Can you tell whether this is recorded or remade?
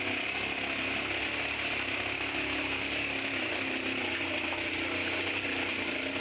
recorded